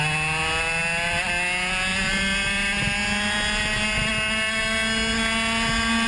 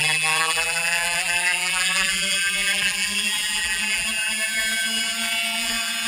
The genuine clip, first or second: first